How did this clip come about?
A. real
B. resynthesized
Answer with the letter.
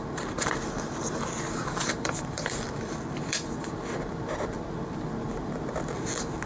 B